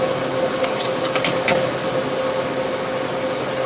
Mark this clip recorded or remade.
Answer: recorded